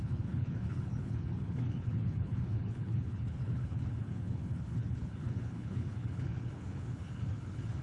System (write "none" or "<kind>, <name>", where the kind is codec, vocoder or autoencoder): codec, HILCodec